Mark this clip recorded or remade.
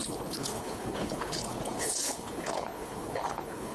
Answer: remade